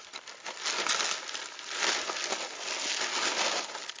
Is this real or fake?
real